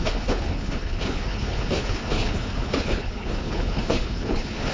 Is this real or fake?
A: fake